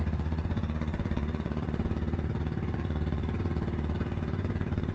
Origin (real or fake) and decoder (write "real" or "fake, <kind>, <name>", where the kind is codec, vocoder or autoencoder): fake, vocoder, Vocos